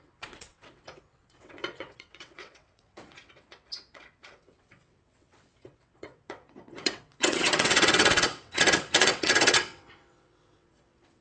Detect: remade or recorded remade